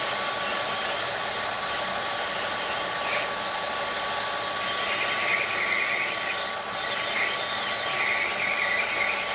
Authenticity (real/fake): real